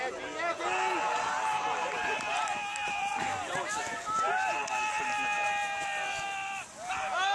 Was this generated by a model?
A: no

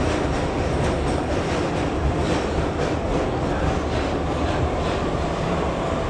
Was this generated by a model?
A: no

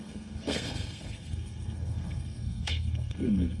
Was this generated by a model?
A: yes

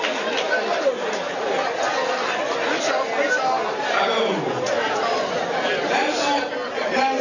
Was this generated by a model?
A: no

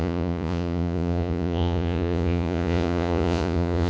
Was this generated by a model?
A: yes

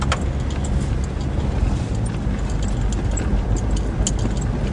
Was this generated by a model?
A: no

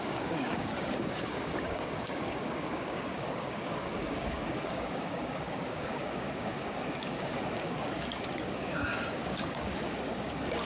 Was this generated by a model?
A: yes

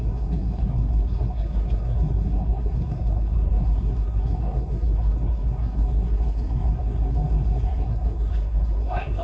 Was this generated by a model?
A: yes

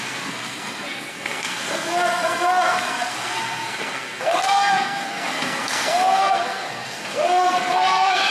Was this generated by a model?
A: yes